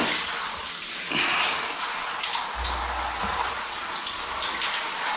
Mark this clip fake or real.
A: real